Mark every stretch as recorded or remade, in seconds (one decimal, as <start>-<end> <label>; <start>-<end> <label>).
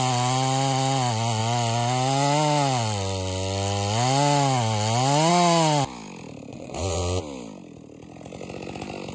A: 0.0-6.5 recorded; 6.5-7.2 remade; 7.2-9.1 recorded